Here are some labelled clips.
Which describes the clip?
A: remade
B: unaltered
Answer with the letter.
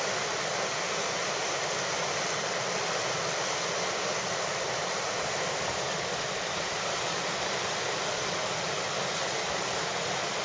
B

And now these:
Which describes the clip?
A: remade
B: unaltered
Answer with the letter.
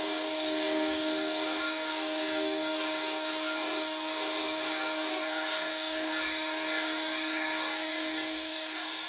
A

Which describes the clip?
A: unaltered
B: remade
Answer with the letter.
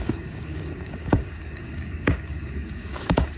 B